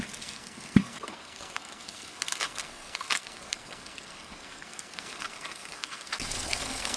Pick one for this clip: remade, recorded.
remade